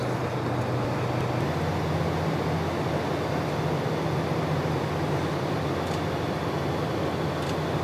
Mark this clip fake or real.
real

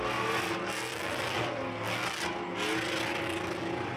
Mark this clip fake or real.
real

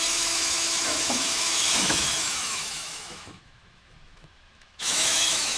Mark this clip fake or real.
fake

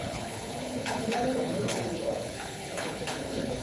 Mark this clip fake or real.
fake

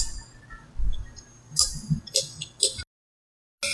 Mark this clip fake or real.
real